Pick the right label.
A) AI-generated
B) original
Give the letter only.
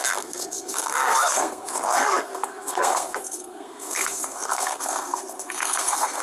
A